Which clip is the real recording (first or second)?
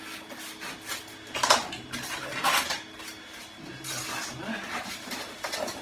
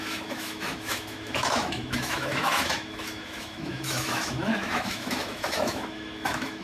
first